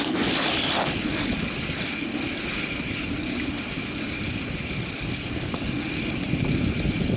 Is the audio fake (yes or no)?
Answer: no